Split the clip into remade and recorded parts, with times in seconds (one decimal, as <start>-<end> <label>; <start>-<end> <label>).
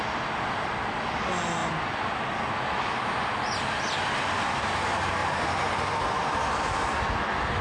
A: 0.0-5.2 recorded; 5.2-5.7 remade; 5.7-7.6 recorded